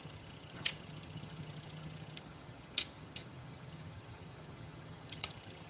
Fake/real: fake